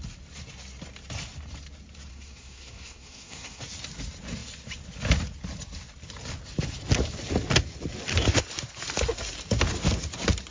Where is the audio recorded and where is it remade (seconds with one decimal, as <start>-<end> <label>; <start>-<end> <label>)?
0.0-2.1 recorded; 2.1-3.6 remade; 3.6-10.5 recorded